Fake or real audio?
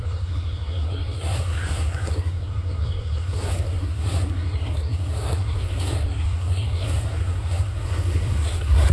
fake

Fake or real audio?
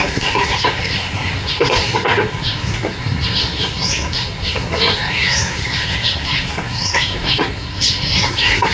fake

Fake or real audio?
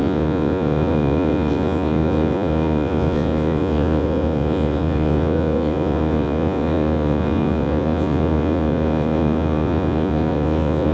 fake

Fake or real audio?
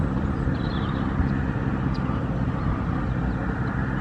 real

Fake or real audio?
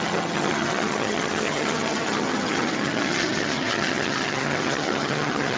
fake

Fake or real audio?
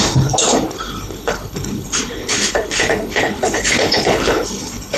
fake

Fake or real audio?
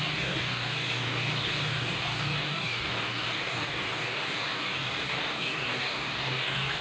fake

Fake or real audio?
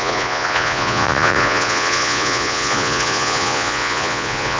fake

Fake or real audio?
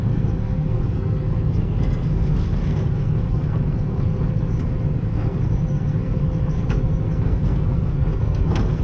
fake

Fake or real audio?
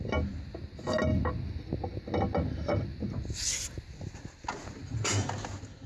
real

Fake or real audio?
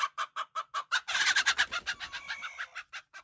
real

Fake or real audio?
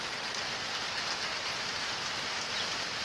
real